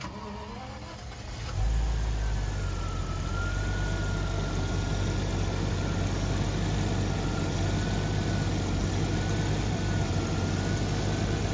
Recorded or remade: recorded